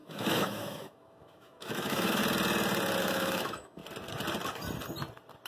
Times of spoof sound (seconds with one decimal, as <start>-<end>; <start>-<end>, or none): 0.0-2.2; 3.0-3.8